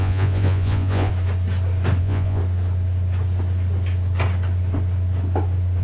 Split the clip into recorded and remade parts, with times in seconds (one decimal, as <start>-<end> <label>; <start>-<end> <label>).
0.0-1.1 remade; 1.1-2.0 recorded; 2.0-2.4 remade; 2.4-5.8 recorded